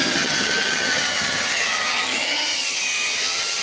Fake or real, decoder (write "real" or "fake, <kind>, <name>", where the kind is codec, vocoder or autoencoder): fake, vocoder, HiFi-GAN